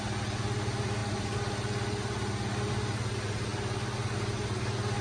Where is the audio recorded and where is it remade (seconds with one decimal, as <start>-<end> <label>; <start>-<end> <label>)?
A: 0.0-5.0 recorded

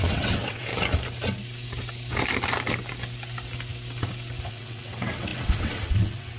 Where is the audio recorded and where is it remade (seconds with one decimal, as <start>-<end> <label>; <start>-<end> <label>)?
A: 0.0-0.7 remade; 0.7-4.5 recorded; 4.5-6.4 remade

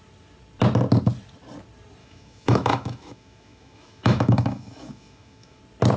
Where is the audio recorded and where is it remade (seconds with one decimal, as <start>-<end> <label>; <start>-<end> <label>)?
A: 0.0-2.0 recorded; 2.0-5.6 remade; 5.6-6.0 recorded

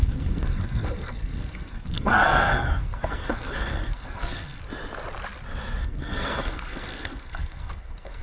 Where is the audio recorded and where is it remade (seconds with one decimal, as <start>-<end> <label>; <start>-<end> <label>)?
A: 0.0-4.6 remade; 4.6-5.8 recorded; 5.8-8.2 remade

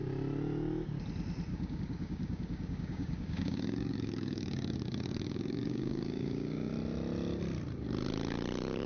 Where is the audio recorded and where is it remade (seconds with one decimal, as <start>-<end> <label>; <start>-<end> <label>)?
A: 0.0-1.5 recorded; 1.5-6.7 remade; 6.7-8.9 recorded

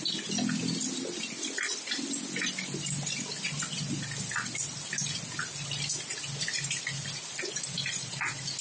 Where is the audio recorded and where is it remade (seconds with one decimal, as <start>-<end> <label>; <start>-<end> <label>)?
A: 0.0-8.6 recorded

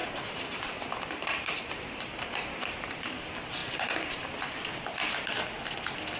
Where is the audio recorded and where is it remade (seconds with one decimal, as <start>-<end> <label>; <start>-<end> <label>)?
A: 0.0-3.0 remade; 3.0-3.6 recorded; 3.6-4.7 remade; 4.7-6.2 recorded